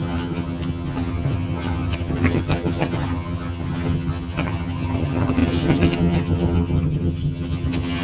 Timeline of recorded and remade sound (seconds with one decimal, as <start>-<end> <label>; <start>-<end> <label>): 0.0-8.0 remade